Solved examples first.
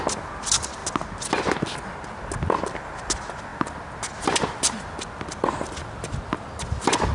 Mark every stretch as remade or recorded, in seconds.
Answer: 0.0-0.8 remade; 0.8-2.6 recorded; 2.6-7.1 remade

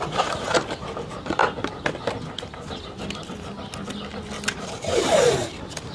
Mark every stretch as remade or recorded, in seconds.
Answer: 0.0-1.4 remade; 1.4-4.5 recorded; 4.5-5.9 remade

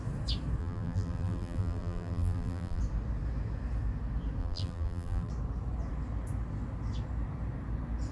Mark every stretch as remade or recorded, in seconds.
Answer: 0.0-0.6 recorded; 0.6-2.8 remade; 2.8-4.4 recorded; 4.4-5.3 remade; 5.3-8.1 recorded